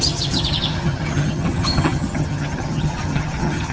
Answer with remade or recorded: remade